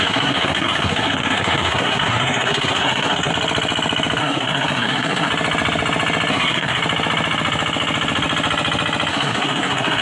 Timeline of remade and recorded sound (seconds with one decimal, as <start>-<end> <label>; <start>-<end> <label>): 0.0-3.3 remade; 3.3-4.2 recorded; 4.2-5.3 remade; 5.3-6.3 recorded; 6.3-6.8 remade; 6.8-9.1 recorded; 9.1-10.0 remade